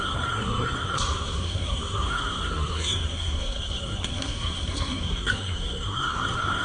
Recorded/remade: remade